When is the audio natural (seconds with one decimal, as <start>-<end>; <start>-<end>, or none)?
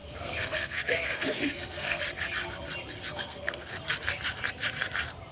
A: 2.0-3.1; 3.8-5.3